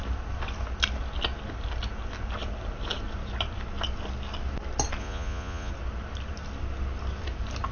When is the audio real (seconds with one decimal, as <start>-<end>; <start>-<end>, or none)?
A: 0.0-5.0; 5.7-7.7